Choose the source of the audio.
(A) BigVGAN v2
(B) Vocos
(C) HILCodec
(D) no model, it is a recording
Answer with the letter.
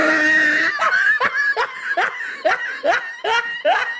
D